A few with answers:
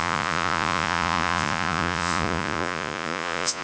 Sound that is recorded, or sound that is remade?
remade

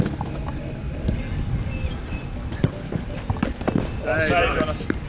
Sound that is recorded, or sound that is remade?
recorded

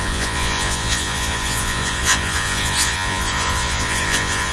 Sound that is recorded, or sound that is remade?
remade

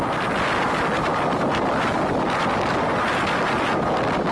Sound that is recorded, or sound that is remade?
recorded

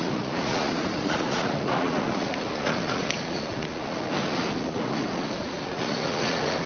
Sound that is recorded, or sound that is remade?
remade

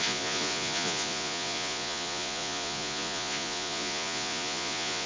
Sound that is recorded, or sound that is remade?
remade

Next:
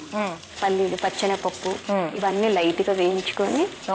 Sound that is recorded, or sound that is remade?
remade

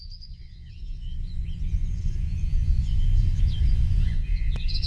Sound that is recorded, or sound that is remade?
remade